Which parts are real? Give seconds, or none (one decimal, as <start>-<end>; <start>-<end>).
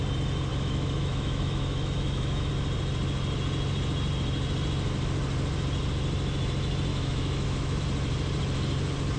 0.0-0.5; 2.5-6.9; 7.8-9.2